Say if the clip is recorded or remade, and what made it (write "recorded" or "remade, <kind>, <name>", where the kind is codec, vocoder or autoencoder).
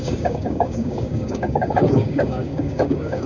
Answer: remade, codec, DAC